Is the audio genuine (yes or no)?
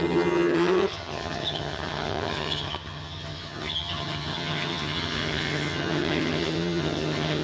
no